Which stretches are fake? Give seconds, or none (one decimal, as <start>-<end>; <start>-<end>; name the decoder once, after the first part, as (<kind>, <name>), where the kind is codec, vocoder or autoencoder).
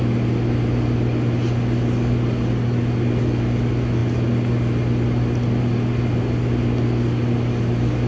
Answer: none